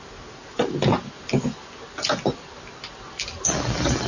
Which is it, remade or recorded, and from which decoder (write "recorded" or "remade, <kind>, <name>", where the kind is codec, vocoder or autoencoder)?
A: recorded